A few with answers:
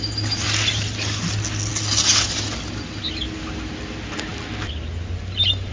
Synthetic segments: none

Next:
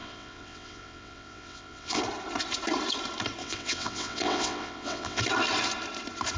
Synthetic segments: 0.0-2.0 (vocoder, WaveNeXt); 3.4-5.2

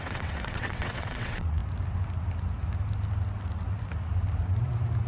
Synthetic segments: 0.0-1.6 (vocoder, WaveNeXt)

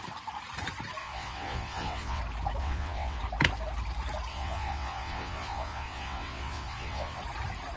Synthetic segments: 1.0-2.2 (vocoder, WaveNeXt); 2.6-3.2; 4.3-7.2

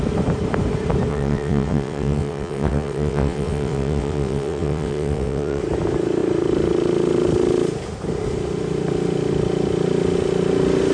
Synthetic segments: 1.1-5.6 (vocoder, WaveNeXt)

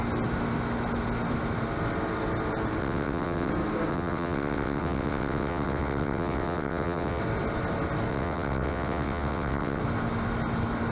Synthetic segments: 2.8-3.5 (vocoder, WaveNeXt); 3.9-7.2; 8.1-9.8

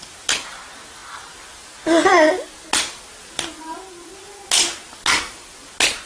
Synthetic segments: none